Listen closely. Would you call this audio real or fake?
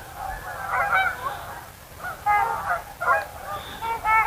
real